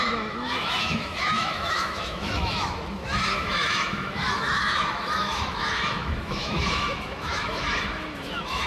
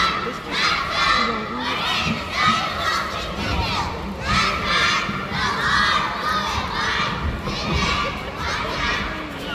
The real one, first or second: second